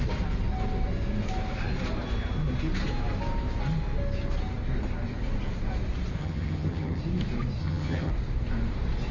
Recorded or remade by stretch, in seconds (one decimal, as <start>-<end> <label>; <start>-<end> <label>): 0.0-6.2 recorded; 6.2-7.0 remade; 7.0-7.6 recorded; 7.6-8.1 remade; 8.1-9.1 recorded